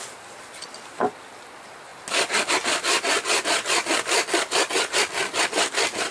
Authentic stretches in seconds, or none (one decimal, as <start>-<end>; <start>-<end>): 0.0-6.1